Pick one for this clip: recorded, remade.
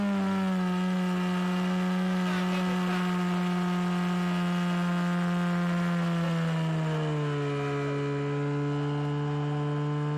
recorded